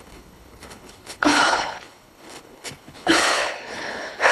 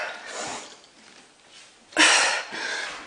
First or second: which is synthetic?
first